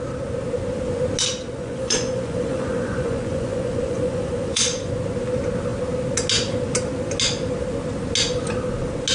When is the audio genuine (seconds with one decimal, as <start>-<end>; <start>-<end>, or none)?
0.0-1.6; 4.9-9.1